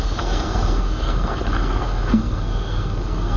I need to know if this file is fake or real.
fake